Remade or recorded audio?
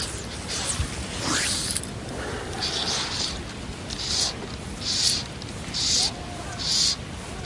recorded